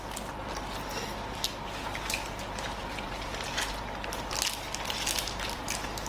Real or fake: real